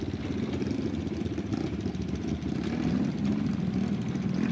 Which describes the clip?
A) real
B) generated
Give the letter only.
A